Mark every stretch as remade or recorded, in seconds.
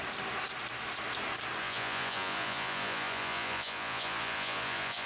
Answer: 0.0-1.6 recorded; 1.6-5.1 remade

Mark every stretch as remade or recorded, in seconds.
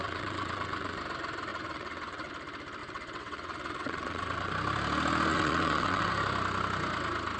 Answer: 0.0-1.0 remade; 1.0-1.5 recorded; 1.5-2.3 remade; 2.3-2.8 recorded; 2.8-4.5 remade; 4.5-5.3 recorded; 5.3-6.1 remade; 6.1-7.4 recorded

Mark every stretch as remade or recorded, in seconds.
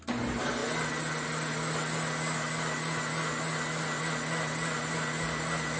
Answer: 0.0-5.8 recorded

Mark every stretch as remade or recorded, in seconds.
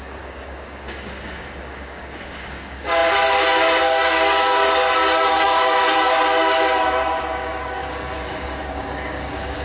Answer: 0.0-9.6 remade